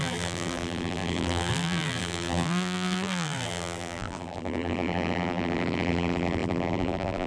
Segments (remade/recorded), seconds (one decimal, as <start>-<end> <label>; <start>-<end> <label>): 0.0-7.3 remade